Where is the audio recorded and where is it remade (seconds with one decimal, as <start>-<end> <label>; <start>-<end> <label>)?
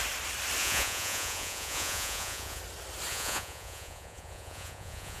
0.0-0.6 recorded; 0.6-2.6 remade; 2.6-3.1 recorded; 3.1-5.2 remade